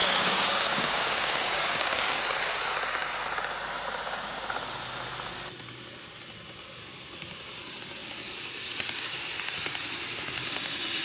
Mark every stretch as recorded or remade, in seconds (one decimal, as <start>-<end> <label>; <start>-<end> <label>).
0.0-2.2 remade; 2.2-11.0 recorded